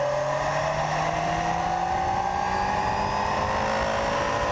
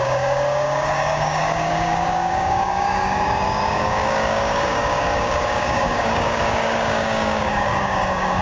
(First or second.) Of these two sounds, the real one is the first